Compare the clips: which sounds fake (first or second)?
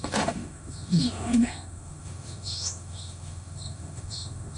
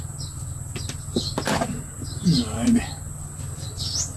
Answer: first